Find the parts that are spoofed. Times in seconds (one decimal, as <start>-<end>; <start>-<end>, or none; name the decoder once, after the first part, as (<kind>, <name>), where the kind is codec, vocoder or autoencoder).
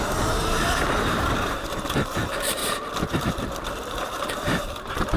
0.0-2.6 (vocoder, BigVGAN v2); 4.3-5.2